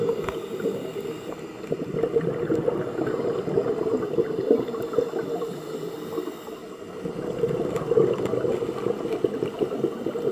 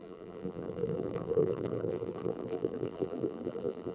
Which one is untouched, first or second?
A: first